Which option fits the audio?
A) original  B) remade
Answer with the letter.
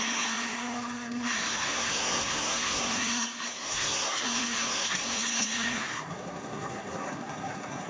B